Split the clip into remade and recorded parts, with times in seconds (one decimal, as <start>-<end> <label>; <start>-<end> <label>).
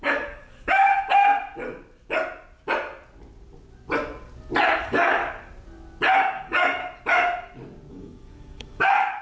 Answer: 0.0-0.9 remade; 0.9-4.8 recorded; 4.8-5.2 remade; 5.2-6.1 recorded; 6.1-6.8 remade; 6.8-7.9 recorded; 7.9-9.2 remade